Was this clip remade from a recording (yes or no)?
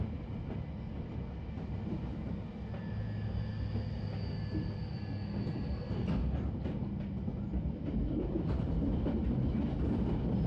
no